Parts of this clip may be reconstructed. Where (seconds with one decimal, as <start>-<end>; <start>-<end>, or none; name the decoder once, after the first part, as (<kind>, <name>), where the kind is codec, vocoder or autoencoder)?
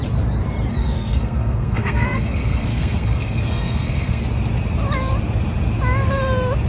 0.7-4.2 (codec, SNAC)